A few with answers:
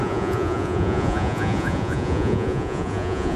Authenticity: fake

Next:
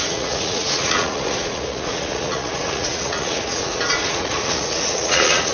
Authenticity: fake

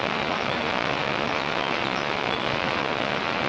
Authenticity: fake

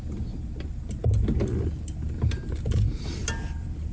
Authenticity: real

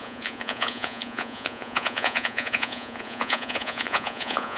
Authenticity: fake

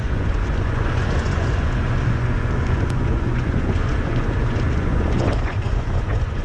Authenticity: fake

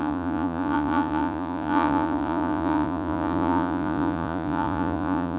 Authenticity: fake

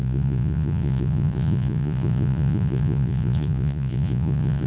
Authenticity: fake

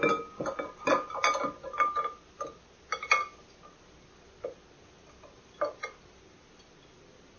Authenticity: real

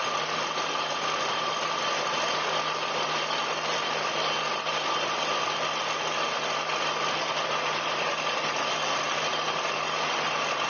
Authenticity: real